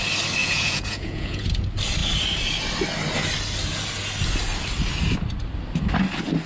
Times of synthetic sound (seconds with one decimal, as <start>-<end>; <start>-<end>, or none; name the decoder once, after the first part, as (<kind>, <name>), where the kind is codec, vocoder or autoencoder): 0.4-1.5 (vocoder, Vocos)